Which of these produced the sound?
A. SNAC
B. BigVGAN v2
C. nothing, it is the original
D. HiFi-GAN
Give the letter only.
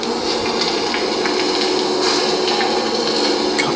C